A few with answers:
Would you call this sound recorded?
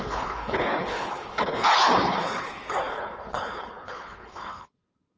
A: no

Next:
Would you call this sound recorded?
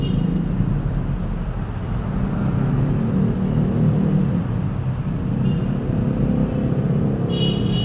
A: yes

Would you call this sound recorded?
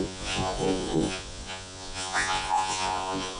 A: no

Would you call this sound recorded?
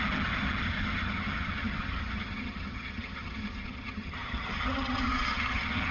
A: no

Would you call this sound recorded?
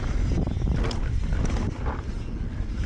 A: yes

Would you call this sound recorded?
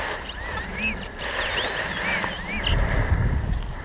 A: yes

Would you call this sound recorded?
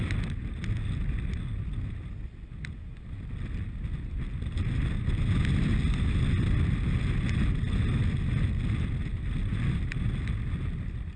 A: yes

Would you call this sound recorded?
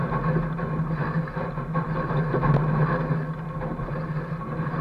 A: yes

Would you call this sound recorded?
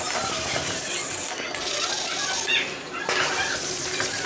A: yes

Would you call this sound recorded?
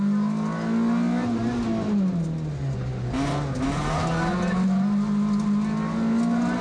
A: yes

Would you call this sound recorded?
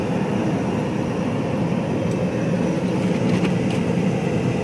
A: yes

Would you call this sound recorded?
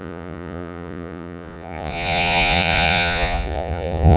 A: no